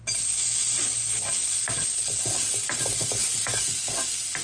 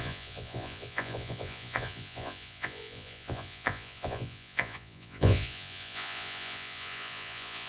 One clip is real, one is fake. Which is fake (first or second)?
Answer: second